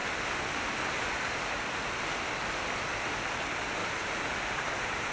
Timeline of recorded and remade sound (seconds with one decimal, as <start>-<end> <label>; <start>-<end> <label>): 0.0-3.8 recorded; 3.8-5.1 remade